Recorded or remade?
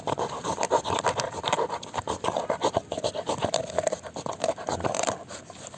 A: recorded